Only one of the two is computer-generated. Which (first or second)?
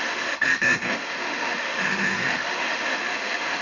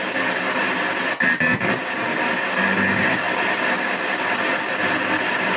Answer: first